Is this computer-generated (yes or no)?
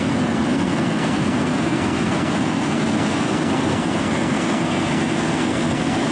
yes